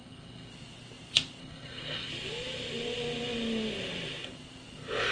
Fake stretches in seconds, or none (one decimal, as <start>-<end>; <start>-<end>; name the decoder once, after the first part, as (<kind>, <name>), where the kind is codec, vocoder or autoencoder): 0.0-0.5 (codec, SNAC); 1.4-2.1